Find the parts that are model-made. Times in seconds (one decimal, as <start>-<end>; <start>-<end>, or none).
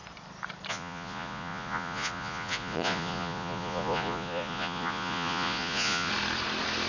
0.7-6.1